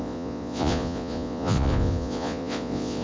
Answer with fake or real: fake